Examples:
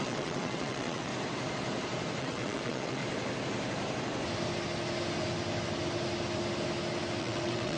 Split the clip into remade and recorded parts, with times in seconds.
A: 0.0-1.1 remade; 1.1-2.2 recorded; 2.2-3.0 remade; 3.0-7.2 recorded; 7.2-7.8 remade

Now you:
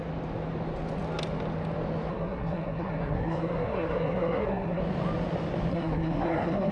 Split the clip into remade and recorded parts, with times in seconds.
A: 0.0-2.1 recorded; 2.1-4.8 remade; 4.8-5.7 recorded; 5.7-6.7 remade

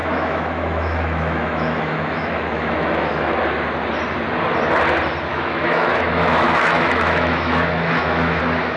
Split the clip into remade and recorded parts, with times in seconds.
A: 0.0-3.4 remade; 3.4-5.3 recorded; 5.3-8.4 remade; 8.4-8.8 recorded

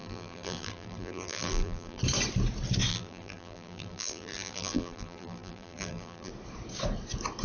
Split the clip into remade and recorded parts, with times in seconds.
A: 0.0-2.0 remade; 2.0-2.9 recorded; 2.9-6.3 remade; 6.3-7.4 recorded

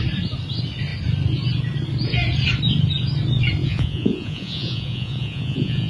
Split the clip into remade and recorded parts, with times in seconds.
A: 0.0-3.6 recorded; 3.6-5.9 remade

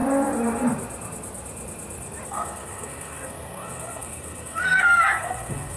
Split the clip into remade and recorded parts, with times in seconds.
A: 0.0-2.3 recorded; 2.3-5.8 remade

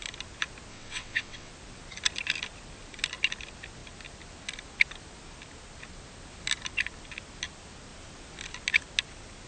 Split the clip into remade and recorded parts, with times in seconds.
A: 0.0-0.7 recorded; 0.7-1.5 remade; 1.5-9.5 recorded